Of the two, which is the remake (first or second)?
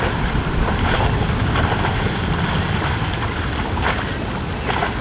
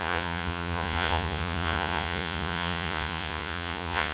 second